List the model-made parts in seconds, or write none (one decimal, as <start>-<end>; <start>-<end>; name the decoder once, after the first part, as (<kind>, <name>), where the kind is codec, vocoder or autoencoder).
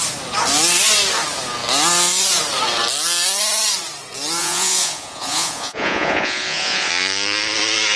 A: 4.4-6.9 (vocoder, Vocos)